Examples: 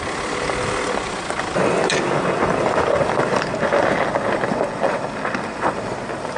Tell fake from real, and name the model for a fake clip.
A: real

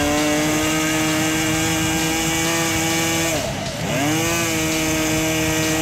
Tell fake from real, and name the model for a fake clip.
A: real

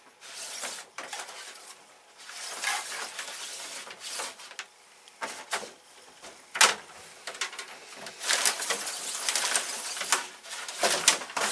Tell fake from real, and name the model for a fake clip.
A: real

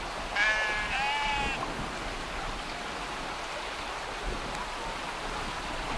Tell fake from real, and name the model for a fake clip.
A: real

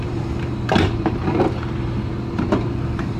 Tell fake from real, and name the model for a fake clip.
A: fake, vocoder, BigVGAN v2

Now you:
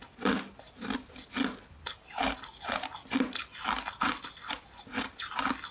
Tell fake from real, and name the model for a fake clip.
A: real